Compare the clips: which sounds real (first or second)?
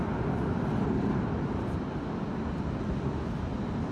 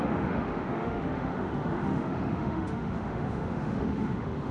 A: first